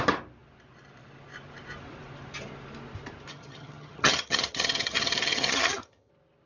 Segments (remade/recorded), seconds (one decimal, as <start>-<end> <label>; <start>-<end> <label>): 0.0-3.3 recorded; 3.3-6.1 remade; 6.1-6.5 recorded